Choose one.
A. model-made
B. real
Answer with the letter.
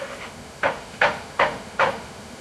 A